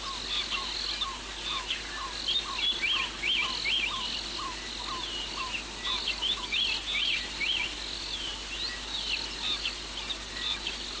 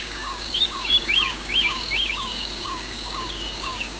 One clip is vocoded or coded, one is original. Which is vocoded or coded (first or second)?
second